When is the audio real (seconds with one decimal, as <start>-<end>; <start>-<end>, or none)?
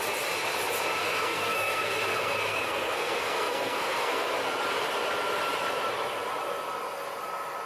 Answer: 0.0-1.0; 4.3-7.7